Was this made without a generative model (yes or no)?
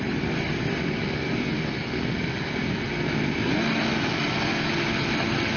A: yes